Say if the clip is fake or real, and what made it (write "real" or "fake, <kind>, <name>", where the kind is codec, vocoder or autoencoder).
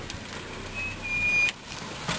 real